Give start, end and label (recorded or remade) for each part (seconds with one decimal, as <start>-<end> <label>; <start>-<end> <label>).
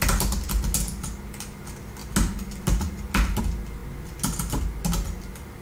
0.0-5.6 recorded